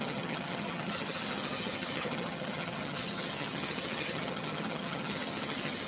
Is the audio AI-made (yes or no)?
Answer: yes